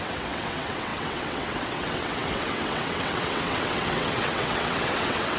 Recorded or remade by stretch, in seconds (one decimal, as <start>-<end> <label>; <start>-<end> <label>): 0.0-5.4 remade